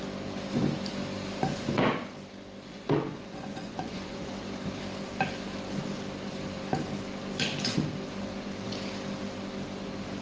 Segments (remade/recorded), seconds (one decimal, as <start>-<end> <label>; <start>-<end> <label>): 0.0-1.5 recorded; 1.5-2.0 remade; 2.0-2.7 recorded; 2.7-4.3 remade; 4.3-10.2 recorded